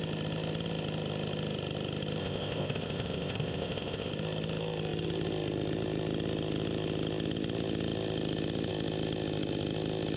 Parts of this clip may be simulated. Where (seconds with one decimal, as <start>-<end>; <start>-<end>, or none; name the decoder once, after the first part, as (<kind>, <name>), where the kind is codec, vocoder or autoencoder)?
2.2-4.1 (codec, ZipCodec)